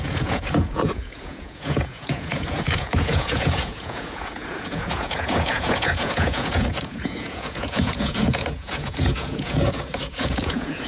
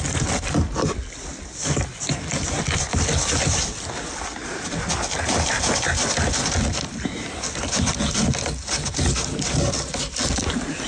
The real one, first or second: second